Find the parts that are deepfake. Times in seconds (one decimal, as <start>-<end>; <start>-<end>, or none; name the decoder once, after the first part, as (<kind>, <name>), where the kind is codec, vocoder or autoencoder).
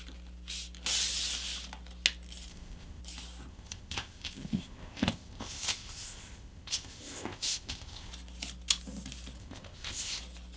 2.5-3.0 (codec, ZipCodec); 3.5-8.1; 9.4-10.2